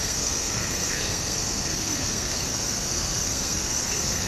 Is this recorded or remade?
remade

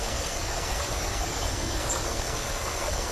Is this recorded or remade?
remade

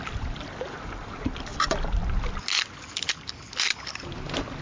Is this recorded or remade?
recorded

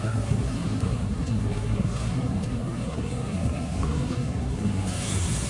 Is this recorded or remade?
remade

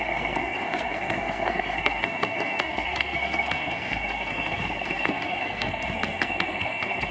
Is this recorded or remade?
remade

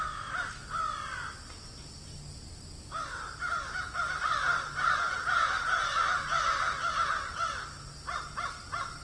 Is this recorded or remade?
recorded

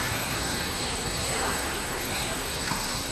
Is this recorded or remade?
remade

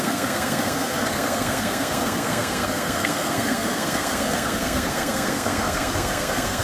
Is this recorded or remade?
remade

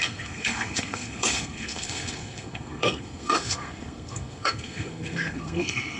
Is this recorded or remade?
remade